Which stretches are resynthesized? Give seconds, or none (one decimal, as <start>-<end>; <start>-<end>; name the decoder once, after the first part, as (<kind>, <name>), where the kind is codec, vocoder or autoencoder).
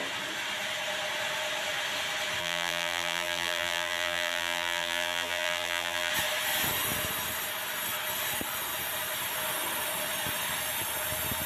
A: 2.4-6.1 (vocoder, BigVGAN v2)